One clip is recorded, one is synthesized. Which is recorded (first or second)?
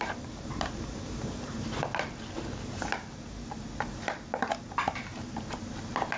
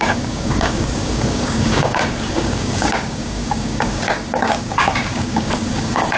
first